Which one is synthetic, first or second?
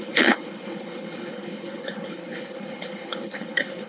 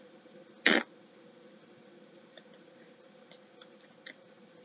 first